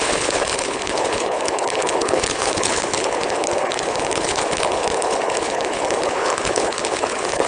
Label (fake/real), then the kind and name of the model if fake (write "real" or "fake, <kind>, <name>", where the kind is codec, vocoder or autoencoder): fake, codec, HILCodec